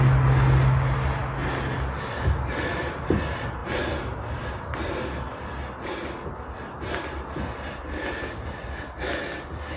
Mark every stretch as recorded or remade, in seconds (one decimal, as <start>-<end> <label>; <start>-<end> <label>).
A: 0.0-9.8 recorded